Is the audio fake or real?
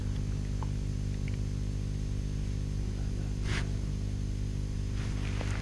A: real